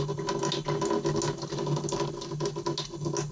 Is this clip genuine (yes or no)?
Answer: yes